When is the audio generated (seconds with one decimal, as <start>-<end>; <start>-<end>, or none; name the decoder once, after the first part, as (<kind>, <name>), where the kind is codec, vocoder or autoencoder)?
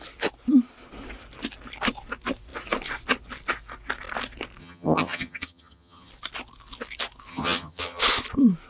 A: 4.6-6.1 (vocoder, HiFi-GAN); 7.3-8.0